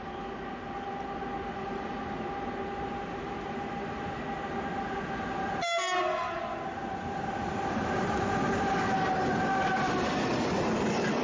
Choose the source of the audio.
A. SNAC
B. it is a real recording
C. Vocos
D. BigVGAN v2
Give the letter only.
B